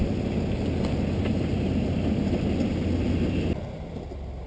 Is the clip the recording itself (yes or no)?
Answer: yes